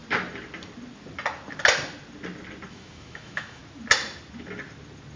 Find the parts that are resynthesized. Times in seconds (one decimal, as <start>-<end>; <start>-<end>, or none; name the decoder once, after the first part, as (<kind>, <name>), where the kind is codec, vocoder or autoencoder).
2.7-3.6 (autoencoder, DAC-VAE)